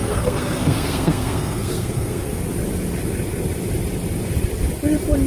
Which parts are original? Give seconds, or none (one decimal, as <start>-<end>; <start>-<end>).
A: 2.4-5.3